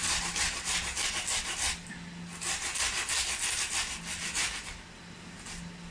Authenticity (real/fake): real